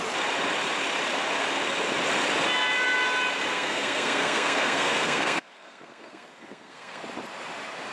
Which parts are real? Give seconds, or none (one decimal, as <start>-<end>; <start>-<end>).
0.0-3.5; 7.0-7.9